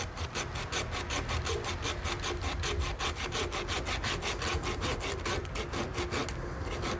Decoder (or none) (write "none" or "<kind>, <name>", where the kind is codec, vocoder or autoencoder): none